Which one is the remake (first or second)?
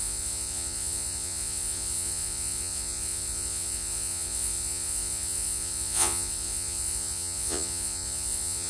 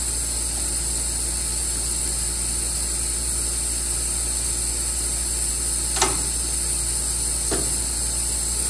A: first